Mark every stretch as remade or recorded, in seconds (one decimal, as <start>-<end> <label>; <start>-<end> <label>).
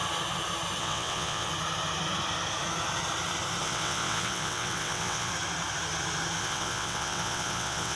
0.0-0.8 recorded; 0.8-1.5 remade; 1.5-3.6 recorded; 3.6-5.3 remade; 5.3-6.4 recorded; 6.4-8.0 remade